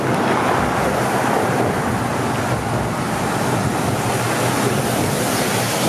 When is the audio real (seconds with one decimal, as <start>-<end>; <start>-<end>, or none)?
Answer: 0.0-5.9